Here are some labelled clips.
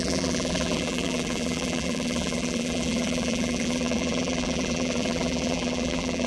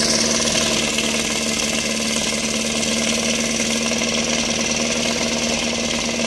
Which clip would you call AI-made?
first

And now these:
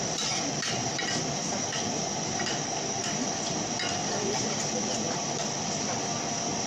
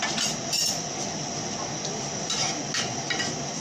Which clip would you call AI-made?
first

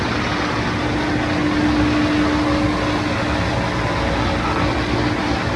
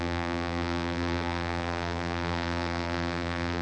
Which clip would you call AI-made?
second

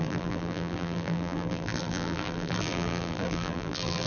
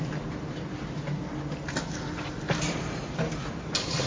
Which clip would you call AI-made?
first